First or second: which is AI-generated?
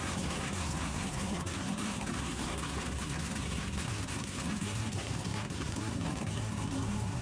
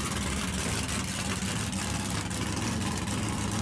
first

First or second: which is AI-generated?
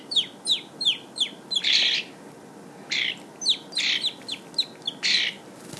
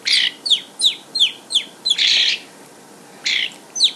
second